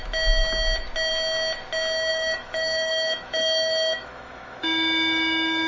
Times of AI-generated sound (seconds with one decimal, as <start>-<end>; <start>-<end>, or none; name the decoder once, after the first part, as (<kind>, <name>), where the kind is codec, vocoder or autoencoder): 2.1-5.7 (autoencoder, DAC-VAE)

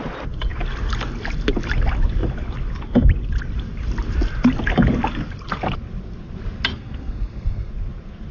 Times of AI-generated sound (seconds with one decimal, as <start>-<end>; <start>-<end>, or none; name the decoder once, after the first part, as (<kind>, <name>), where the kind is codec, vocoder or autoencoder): 6.7-7.7 (codec, SNAC)

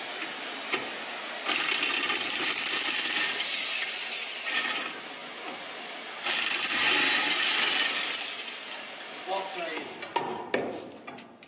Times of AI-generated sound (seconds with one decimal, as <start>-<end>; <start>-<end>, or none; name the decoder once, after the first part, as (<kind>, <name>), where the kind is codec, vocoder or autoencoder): none

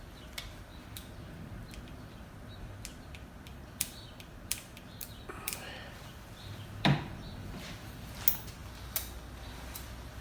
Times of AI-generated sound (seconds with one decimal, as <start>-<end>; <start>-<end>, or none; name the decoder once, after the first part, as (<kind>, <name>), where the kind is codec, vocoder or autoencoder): 0.7-2.3 (vocoder, BigVGAN v2); 3.5-8.1

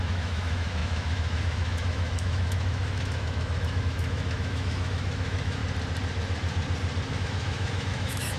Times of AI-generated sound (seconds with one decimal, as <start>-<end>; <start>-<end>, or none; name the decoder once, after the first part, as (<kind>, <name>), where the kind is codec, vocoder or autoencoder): 0.0-5.6 (autoencoder, DAC-VAE); 7.1-8.4

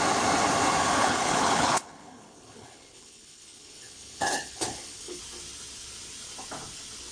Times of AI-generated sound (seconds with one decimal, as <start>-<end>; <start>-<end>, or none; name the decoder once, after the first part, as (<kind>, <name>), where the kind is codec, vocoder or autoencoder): 1.0-5.2 (codec, HILCodec)

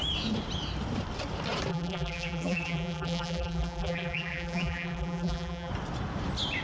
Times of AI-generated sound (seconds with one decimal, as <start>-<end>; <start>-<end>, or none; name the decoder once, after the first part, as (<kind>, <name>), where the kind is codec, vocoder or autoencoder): 1.7-5.7 (vocoder, BigVGAN v2)

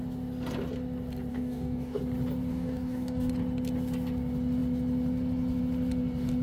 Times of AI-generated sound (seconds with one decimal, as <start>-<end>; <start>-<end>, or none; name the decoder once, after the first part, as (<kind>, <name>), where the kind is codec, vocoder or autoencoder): 1.3-2.0 (codec, DAC); 2.5-3.3